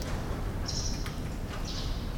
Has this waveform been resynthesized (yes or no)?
no